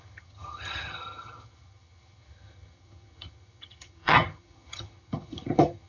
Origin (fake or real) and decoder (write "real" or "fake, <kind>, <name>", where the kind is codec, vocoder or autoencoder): fake, vocoder, HiFi-GAN